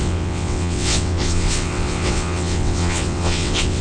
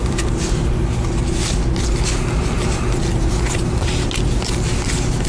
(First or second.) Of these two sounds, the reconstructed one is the first